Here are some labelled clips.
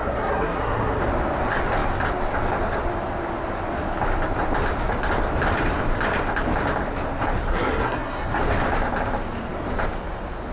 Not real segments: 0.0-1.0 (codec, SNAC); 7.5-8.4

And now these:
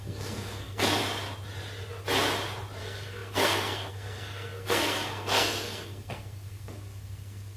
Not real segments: 0.0-1.0 (codec, SNAC); 2.8-7.6

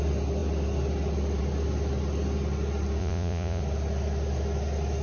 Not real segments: 3.0-3.6 (vocoder, Vocos)

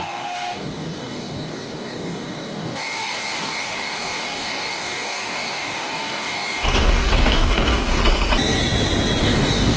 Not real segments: 0.0-8.0 (codec, DAC); 9.2-9.8

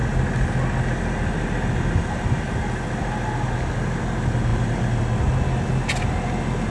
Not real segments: none

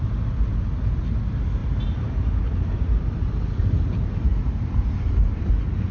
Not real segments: none

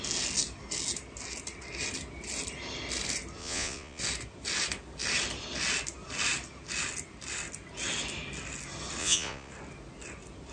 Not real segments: 3.4-4.0 (vocoder, Vocos); 9.0-9.5

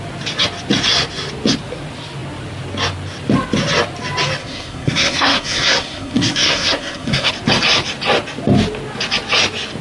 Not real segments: 4.4-7.3 (codec, SNAC)